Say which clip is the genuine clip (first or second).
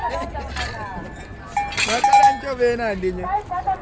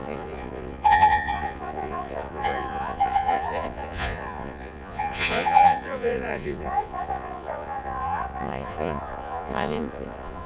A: first